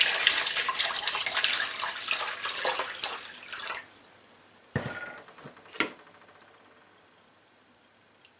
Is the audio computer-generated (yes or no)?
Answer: no